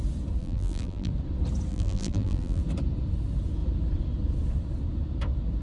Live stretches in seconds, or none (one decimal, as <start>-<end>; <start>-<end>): 0.0-0.4; 1.1-1.7; 2.6-5.6